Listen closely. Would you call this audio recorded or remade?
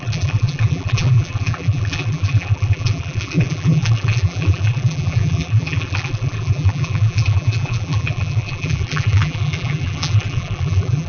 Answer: remade